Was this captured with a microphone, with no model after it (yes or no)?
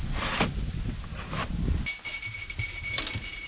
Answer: yes